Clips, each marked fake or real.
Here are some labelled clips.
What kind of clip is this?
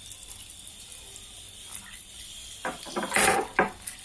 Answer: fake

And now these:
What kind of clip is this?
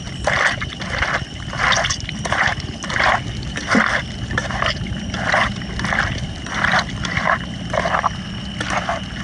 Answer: real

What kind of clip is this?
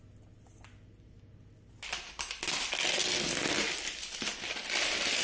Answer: real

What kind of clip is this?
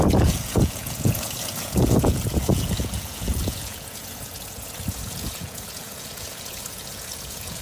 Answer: fake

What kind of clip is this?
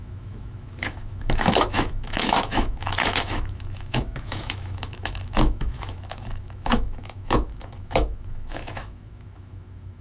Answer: fake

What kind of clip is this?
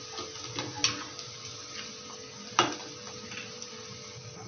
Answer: real